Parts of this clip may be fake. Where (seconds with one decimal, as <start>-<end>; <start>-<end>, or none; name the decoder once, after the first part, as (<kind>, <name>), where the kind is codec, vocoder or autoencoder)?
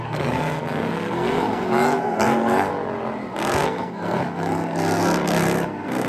0.0-2.7 (codec, SNAC); 3.4-6.1